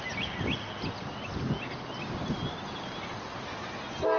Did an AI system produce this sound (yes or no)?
no